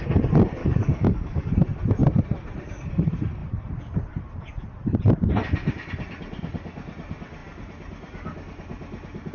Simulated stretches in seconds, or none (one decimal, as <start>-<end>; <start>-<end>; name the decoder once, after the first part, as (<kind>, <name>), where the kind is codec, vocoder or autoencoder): 0.6-1.5 (codec, DAC)